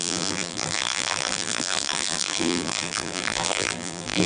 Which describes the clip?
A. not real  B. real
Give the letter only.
A